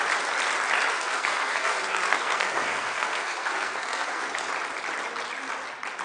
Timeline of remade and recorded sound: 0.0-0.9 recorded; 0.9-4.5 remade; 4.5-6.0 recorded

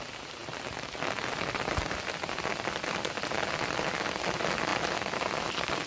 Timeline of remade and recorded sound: 0.0-5.9 recorded

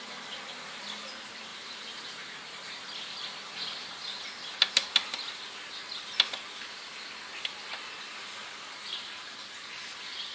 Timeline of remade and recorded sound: 0.0-1.5 recorded; 1.5-2.8 remade; 2.8-10.3 recorded

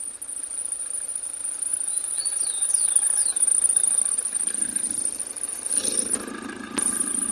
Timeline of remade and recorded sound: 0.0-1.9 recorded; 1.9-2.7 remade; 2.7-7.3 recorded